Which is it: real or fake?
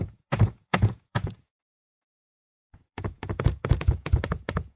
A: fake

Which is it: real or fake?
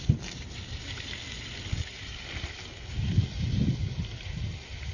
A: real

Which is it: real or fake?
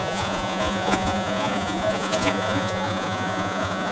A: fake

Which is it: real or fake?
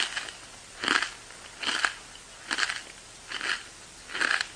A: real